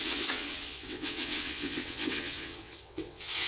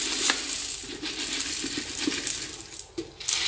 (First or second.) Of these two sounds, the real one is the second